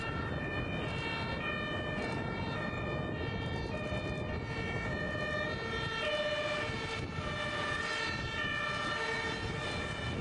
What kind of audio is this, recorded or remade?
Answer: recorded